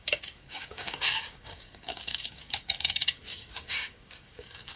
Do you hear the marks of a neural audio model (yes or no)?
yes